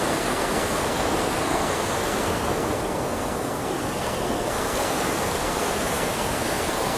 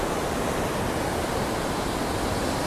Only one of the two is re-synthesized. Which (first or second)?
first